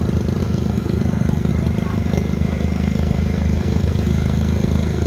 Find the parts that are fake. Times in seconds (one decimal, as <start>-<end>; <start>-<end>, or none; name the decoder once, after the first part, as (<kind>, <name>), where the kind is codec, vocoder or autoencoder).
0.4-1.5 (codec, SNAC); 1.9-5.1